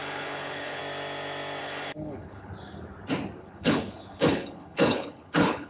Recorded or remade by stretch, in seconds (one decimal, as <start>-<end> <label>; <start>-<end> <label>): 0.0-0.8 remade; 0.8-1.6 recorded; 1.6-2.5 remade; 2.5-3.4 recorded; 3.4-5.7 remade